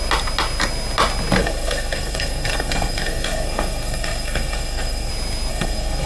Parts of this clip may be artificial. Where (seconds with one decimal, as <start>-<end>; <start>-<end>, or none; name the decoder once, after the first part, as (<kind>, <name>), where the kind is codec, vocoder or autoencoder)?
1.4-5.1 (codec, SNAC); 5.5-6.1